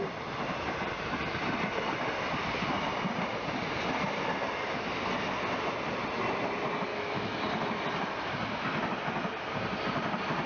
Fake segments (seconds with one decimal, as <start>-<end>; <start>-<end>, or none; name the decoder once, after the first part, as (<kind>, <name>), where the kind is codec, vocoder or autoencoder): 6.9-7.4 (autoencoder, DAC-VAE)